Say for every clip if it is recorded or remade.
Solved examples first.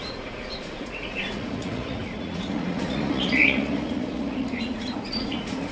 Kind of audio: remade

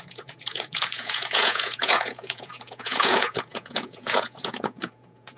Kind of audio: remade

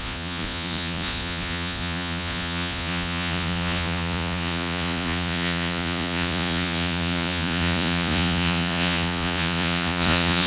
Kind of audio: remade